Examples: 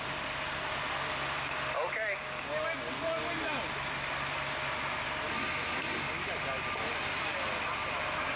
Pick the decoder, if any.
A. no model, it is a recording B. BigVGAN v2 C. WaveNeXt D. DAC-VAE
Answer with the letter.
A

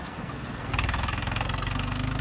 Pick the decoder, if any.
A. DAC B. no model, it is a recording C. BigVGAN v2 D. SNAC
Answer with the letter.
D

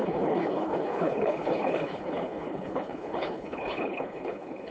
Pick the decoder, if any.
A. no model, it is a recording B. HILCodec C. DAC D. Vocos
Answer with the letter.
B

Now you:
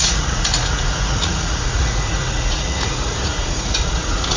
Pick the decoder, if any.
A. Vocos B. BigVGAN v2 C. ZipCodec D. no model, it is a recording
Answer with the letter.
A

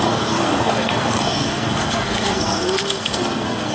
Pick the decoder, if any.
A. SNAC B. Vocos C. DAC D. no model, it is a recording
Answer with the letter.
A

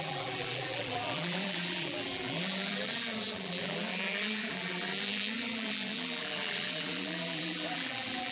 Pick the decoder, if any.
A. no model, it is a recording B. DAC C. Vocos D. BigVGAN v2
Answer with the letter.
D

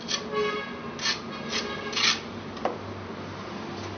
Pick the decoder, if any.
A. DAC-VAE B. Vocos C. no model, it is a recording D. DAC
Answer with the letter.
C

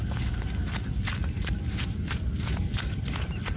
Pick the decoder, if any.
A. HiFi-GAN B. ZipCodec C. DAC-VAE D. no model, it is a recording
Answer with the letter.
D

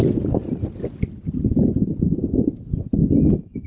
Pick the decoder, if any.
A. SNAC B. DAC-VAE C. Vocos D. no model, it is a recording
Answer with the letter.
D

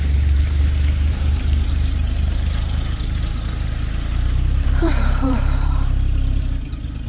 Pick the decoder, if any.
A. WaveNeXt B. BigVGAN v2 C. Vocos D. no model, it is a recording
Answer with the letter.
B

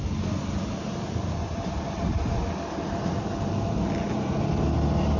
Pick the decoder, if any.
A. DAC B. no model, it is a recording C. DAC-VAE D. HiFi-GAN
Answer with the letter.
B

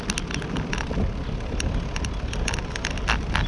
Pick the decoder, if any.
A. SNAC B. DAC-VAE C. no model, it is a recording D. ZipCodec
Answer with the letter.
C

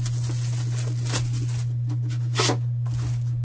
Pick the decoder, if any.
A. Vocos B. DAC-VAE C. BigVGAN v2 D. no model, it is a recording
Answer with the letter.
D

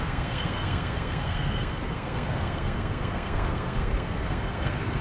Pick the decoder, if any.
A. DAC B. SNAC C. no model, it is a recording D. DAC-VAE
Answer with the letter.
B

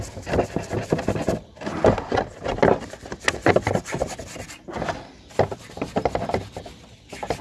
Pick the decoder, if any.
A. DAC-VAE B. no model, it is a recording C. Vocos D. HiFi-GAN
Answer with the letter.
B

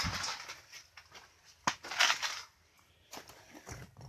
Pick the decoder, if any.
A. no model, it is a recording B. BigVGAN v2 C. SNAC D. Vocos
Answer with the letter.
A